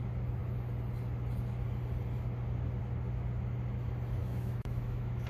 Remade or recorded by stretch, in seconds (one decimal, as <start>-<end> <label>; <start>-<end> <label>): 0.0-4.2 recorded; 4.2-5.3 remade